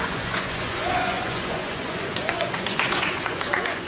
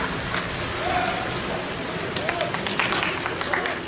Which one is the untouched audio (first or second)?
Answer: second